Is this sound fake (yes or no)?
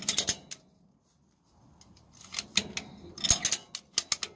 no